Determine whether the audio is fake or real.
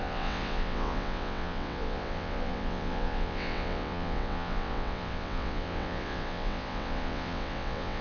fake